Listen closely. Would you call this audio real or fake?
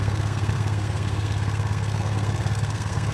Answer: fake